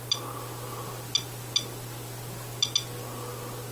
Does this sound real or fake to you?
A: real